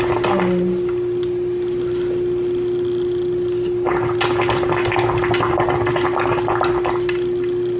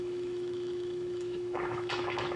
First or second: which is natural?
first